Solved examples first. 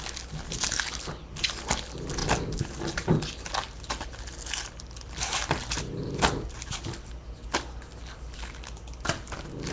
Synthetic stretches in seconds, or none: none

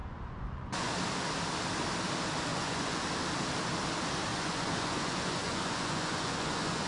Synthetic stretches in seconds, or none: 0.0-0.9 (vocoder, Vocos); 2.5-3.0; 4.3-6.9

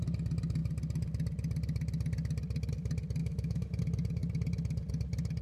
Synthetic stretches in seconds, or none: 3.2-3.8 (autoencoder, DAC-VAE)

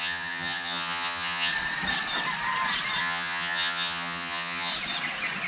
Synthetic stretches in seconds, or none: 0.0-1.5 (vocoder, HiFi-GAN); 3.0-4.7

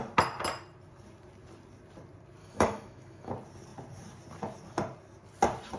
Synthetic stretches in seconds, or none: 2.4-3.3 (autoencoder, DAC-VAE)

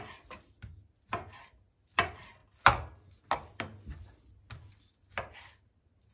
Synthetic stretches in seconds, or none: none

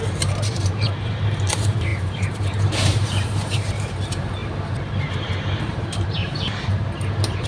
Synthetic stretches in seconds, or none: 0.0-4.4 (vocoder, BigVGAN v2); 5.0-7.5

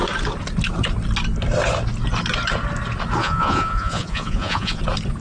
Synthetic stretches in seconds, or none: 3.2-4.8 (vocoder, Vocos)